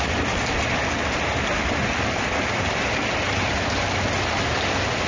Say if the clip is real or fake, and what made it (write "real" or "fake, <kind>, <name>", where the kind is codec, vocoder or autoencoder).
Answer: real